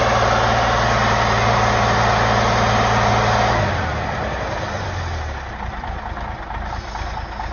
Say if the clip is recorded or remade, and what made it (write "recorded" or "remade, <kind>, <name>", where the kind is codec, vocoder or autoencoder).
recorded